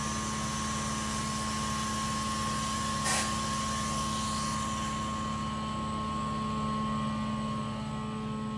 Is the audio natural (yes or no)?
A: yes